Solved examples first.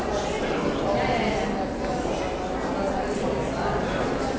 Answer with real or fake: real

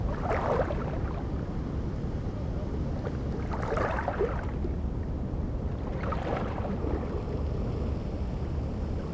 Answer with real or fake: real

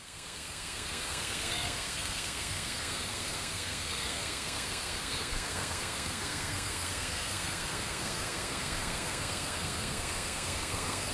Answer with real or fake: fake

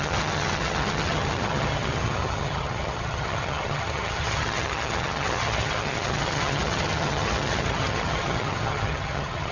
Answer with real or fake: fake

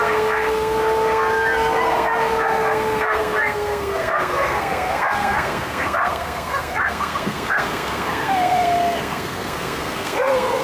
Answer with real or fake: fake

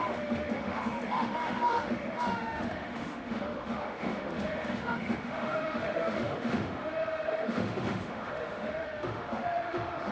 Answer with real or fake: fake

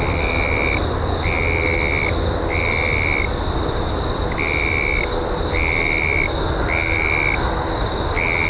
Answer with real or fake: real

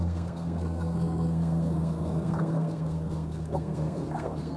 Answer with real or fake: fake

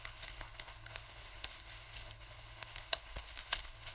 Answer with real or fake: fake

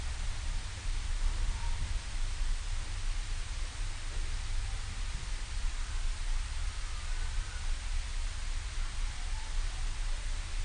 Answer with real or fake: real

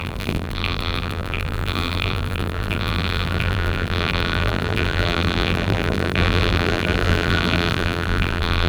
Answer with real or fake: fake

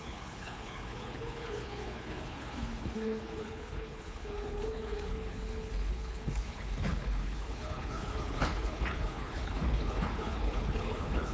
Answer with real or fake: fake